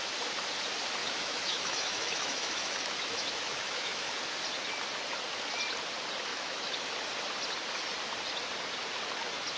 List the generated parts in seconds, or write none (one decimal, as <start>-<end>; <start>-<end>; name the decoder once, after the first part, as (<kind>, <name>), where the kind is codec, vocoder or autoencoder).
1.0-4.1 (autoencoder, DAC-VAE); 6.3-6.9